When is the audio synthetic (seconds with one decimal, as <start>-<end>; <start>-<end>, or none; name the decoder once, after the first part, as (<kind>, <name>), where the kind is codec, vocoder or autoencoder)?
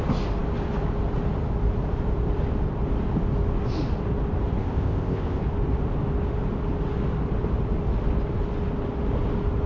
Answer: 4.6-5.4 (codec, ZipCodec)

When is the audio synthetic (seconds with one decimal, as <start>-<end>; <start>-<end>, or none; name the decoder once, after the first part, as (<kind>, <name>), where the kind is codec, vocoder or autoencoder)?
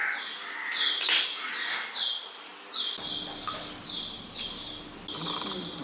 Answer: none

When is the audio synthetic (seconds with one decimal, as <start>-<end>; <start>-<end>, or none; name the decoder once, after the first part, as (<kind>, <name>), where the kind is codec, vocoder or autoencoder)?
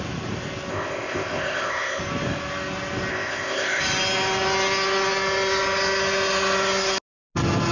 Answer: 0.7-2.0 (codec, ZipCodec); 3.1-3.8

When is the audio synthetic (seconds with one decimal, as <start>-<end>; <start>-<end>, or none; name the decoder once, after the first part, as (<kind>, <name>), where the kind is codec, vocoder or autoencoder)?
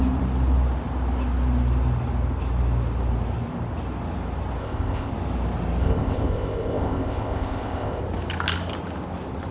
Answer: 4.6-5.1 (codec, ZipCodec); 5.8-8.0